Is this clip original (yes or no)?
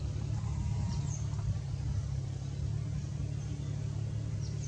yes